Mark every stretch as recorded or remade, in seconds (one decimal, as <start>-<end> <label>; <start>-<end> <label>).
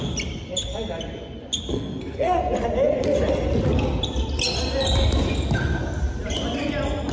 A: 0.0-1.7 recorded; 1.7-2.4 remade; 2.4-7.1 recorded